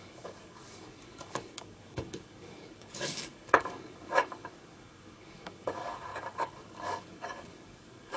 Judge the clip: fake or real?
fake